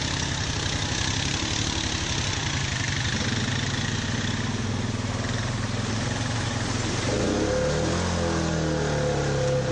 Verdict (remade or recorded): recorded